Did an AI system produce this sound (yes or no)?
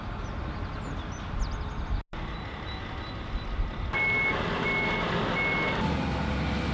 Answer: no